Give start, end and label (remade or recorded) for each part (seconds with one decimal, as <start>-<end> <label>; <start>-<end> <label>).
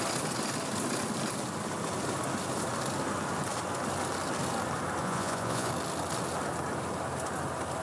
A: 0.0-5.0 recorded; 5.0-5.7 remade; 5.7-7.8 recorded